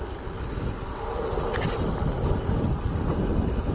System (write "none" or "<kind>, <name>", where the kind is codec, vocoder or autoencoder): none